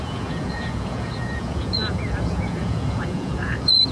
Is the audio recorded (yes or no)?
no